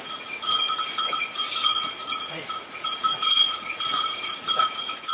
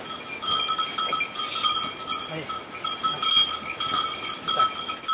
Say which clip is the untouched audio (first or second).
second